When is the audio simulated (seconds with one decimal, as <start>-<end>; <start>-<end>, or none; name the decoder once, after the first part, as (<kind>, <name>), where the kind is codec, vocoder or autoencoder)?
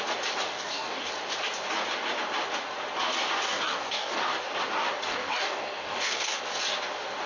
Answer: 0.5-1.1 (codec, DAC); 3.5-4.2; 5.1-6.4